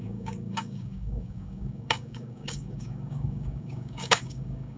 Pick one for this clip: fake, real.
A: fake